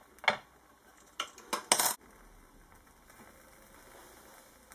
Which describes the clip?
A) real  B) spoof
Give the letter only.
A